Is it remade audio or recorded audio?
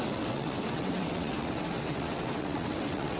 remade